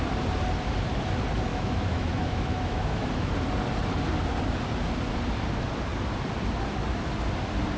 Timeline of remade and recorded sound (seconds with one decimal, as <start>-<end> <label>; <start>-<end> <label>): 0.0-1.5 recorded; 1.5-3.3 remade; 3.3-7.8 recorded